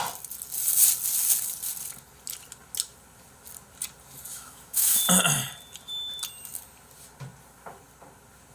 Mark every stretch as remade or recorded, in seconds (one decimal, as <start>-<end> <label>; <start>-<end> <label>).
0.0-4.3 recorded; 4.3-5.0 remade; 5.0-8.5 recorded